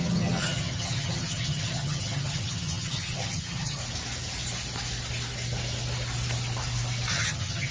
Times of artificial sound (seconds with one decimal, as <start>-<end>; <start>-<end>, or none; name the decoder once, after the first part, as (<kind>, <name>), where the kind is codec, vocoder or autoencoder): 0.0-3.8 (vocoder, HiFi-GAN); 7.1-7.7